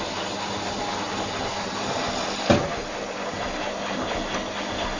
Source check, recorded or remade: recorded